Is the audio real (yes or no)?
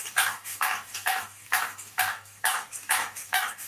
no